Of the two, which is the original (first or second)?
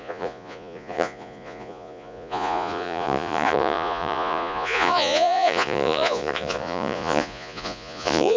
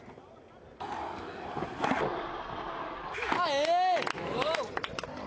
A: second